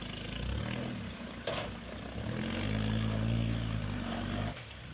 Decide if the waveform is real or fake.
real